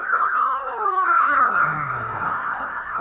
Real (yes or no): no